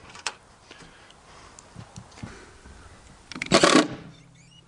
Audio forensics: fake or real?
real